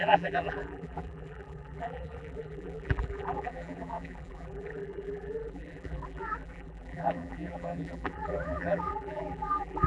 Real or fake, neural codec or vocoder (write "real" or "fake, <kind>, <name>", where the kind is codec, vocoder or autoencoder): fake, vocoder, BigVGAN v2